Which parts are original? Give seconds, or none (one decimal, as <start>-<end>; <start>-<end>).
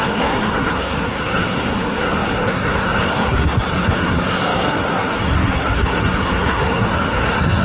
none